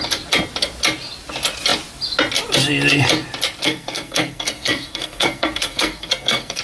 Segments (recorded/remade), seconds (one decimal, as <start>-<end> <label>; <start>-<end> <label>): 0.0-3.6 recorded; 3.6-6.6 remade